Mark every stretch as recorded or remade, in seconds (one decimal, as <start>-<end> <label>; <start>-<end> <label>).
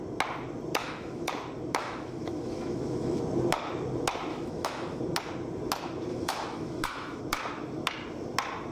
0.0-0.8 recorded; 0.8-1.3 remade; 1.3-1.8 recorded; 1.8-3.2 remade; 3.2-4.3 recorded; 4.3-5.0 remade; 5.0-6.1 recorded; 6.1-7.2 remade; 7.2-8.7 recorded